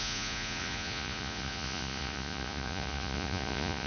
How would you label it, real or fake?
fake